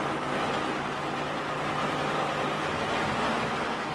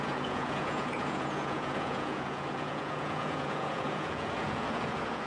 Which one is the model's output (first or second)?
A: second